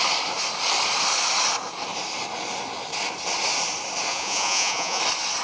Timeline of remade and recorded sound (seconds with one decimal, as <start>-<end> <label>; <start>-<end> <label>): 0.0-4.1 recorded; 4.1-5.0 remade; 5.0-5.4 recorded